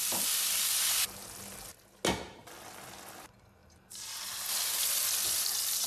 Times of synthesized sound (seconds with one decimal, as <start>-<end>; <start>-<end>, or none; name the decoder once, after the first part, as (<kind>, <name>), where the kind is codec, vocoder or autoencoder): none

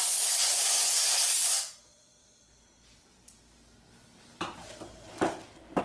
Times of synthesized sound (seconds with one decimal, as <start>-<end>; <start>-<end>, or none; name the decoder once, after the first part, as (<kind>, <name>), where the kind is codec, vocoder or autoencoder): none

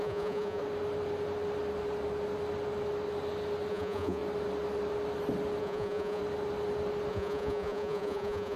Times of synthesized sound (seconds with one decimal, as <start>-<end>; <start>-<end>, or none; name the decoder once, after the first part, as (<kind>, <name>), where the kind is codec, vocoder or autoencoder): 0.0-0.6 (vocoder, Vocos); 3.7-4.2; 5.6-6.2; 7.1-8.6

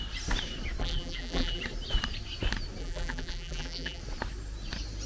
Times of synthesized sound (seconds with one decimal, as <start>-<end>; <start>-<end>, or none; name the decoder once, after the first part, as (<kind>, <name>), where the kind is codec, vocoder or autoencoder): 0.8-1.6 (vocoder, BigVGAN v2); 2.8-4.0

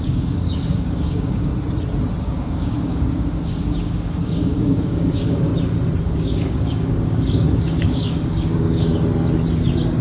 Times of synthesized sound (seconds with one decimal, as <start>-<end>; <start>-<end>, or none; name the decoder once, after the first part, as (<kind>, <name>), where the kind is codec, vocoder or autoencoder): 0.0-1.5 (codec, DAC); 2.2-5.5; 6.0-8.9